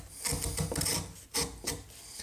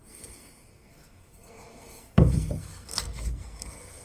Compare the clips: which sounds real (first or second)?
first